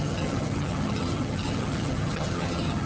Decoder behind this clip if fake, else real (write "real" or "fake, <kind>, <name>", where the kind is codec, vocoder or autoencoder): fake, vocoder, HiFi-GAN